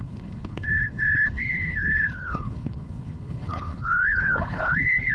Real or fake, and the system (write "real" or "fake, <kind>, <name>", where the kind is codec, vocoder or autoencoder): fake, codec, HILCodec